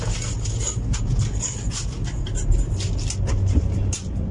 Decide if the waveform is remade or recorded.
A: recorded